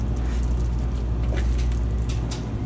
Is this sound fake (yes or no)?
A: no